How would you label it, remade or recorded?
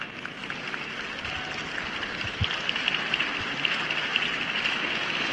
recorded